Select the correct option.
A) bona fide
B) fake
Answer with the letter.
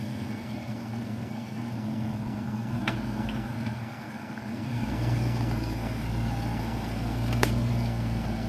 B